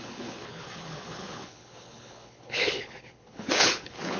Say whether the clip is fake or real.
fake